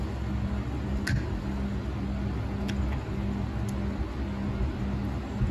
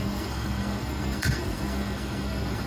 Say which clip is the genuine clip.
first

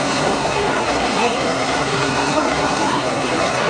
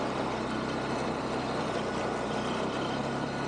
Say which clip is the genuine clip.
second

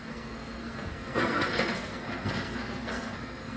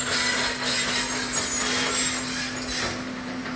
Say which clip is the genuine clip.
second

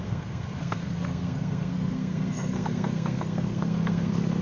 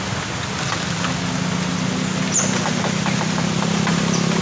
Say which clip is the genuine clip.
second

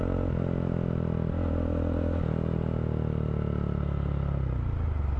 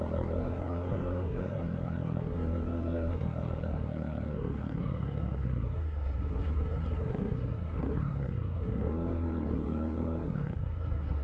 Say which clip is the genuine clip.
first